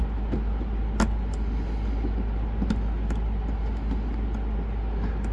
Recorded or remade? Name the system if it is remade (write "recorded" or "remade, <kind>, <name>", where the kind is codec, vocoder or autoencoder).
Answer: recorded